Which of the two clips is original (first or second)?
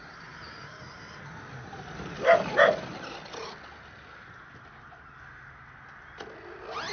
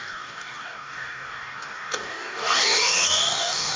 first